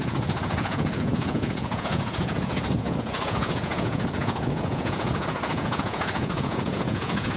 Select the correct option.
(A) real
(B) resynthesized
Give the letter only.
B